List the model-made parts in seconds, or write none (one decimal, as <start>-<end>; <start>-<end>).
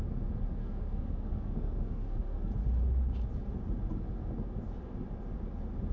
0.6-2.5